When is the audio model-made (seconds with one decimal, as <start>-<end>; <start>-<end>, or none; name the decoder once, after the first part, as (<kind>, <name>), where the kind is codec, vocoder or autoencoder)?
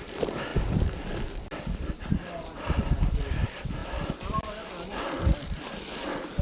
none